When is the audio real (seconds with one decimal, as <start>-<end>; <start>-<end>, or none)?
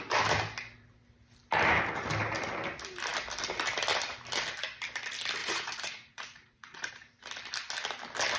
0.0-5.4; 6.9-8.4